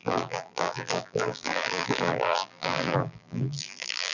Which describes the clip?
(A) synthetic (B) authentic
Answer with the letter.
A